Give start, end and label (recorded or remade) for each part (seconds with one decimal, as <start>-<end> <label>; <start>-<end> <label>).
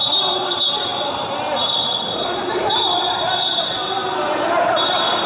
0.0-5.3 recorded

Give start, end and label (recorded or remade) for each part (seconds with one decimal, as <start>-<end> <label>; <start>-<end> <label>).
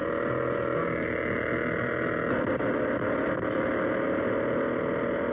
0.0-5.3 recorded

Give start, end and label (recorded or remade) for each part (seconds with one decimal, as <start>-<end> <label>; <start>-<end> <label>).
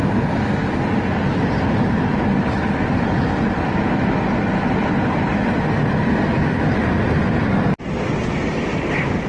0.0-9.3 recorded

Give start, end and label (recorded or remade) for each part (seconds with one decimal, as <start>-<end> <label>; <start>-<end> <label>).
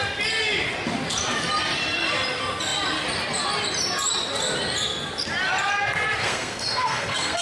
0.0-6.2 recorded; 6.2-7.4 remade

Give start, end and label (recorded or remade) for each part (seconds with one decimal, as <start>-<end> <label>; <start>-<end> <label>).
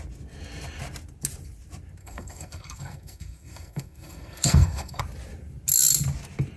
0.0-2.0 recorded; 2.0-5.0 remade; 5.0-6.6 recorded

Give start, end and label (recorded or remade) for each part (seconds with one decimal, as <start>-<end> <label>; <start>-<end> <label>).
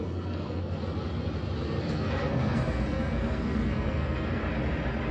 0.0-0.8 remade; 0.8-1.8 recorded; 1.8-4.4 remade; 4.4-5.1 recorded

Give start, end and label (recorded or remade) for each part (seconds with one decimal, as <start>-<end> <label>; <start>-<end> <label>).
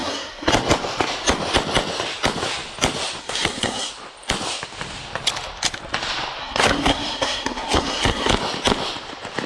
0.0-0.5 remade; 0.5-3.2 recorded; 3.2-3.9 remade; 3.9-6.4 recorded; 6.4-8.3 remade; 8.3-9.5 recorded